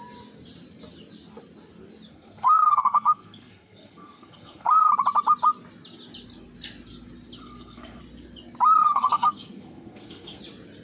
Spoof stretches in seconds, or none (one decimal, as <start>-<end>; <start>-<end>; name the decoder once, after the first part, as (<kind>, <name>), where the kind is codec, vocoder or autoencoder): 2.1-4.9 (codec, SNAC); 7.4-8.0; 8.8-10.4